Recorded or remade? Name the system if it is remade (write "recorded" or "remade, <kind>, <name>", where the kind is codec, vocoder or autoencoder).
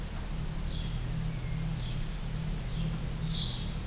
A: recorded